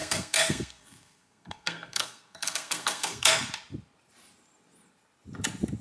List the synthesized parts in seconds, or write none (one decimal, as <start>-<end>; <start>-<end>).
0.0-3.5